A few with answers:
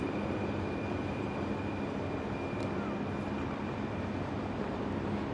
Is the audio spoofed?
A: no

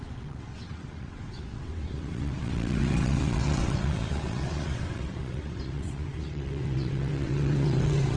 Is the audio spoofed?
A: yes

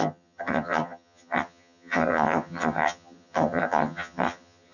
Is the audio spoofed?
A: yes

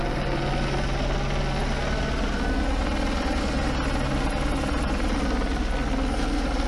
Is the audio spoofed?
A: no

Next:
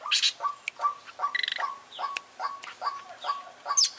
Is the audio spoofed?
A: no